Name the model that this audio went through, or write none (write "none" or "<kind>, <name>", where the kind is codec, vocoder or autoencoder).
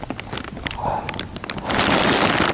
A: none